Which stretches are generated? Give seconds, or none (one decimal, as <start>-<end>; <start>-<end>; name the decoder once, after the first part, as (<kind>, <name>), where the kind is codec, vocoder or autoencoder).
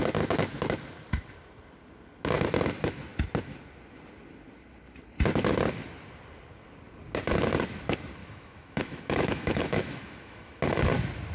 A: 8.2-10.6 (autoencoder, DAC-VAE)